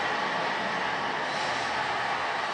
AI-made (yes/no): no